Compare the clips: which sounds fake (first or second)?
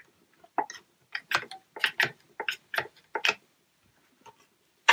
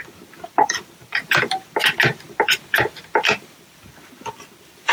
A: second